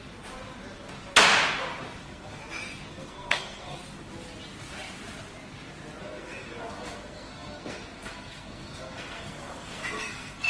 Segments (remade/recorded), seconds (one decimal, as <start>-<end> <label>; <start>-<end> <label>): 0.0-2.0 recorded; 2.0-2.4 remade; 2.4-2.9 recorded; 2.9-3.8 remade; 3.8-6.0 recorded; 6.0-10.5 remade